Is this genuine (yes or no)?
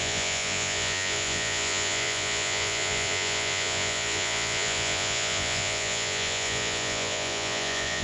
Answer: no